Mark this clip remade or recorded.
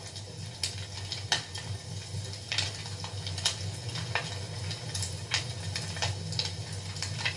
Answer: recorded